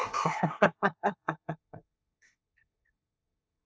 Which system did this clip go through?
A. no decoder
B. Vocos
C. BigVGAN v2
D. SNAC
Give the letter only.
D